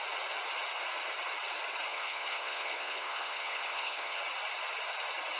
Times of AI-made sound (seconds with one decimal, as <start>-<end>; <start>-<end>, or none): 1.9-4.2